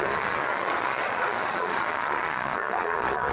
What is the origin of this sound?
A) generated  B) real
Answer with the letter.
A